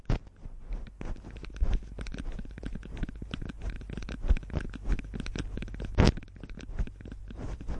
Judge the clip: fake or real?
real